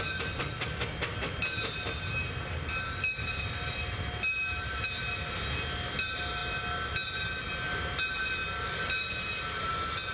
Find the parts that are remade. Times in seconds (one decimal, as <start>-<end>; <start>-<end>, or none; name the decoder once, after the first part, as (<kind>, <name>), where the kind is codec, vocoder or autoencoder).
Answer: none